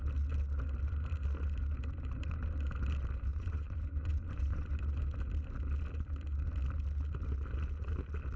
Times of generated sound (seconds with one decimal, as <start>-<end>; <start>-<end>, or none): 3.3-4.7